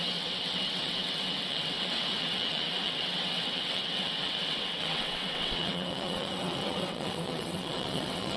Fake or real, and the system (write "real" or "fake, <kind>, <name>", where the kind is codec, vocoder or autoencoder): fake, vocoder, WaveNeXt